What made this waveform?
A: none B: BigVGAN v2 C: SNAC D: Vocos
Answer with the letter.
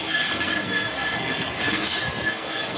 C